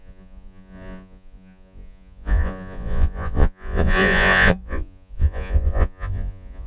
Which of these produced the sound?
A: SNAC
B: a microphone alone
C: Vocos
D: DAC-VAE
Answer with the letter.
C